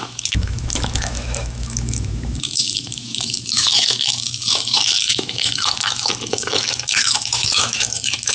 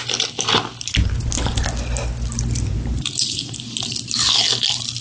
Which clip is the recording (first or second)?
second